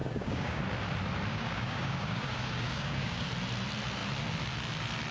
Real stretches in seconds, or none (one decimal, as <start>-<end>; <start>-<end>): 0.6-1.3; 3.3-5.1